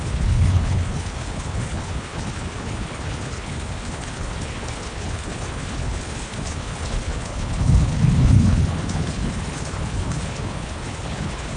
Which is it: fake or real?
fake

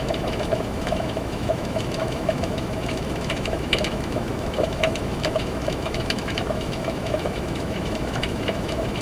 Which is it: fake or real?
fake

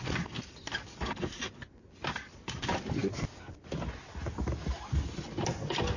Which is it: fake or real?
real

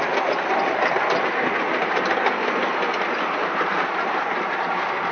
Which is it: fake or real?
real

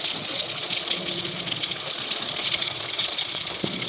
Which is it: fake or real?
fake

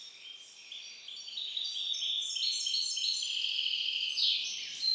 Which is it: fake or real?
real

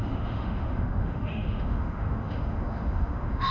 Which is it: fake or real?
fake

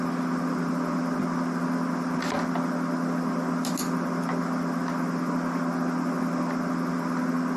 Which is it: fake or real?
real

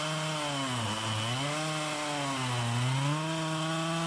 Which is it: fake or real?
real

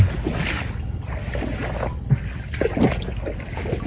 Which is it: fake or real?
real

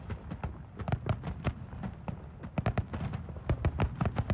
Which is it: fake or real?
real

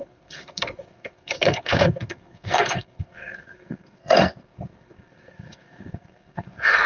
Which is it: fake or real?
fake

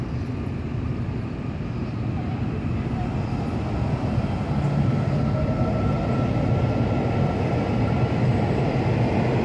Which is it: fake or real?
real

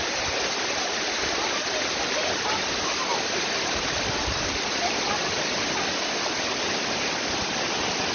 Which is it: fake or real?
real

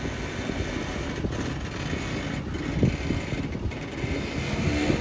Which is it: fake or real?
real